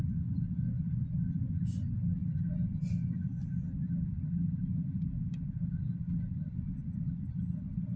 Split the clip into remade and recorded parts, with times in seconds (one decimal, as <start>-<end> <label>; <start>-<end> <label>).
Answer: 0.0-8.0 recorded